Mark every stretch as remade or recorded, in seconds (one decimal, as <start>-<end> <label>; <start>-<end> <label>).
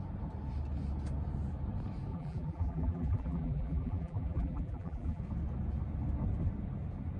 0.0-2.1 recorded; 2.1-5.2 remade; 5.2-7.2 recorded